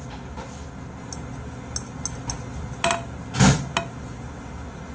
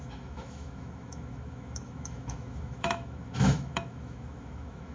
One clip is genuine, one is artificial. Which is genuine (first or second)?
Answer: first